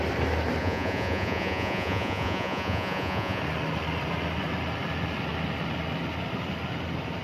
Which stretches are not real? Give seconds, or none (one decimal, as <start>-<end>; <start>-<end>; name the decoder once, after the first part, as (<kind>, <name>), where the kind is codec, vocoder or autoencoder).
0.6-3.4 (vocoder, Vocos)